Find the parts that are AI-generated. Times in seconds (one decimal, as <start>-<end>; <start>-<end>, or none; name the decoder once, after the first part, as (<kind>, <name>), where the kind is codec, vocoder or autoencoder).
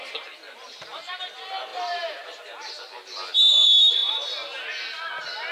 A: 1.7-2.7 (vocoder, BigVGAN v2)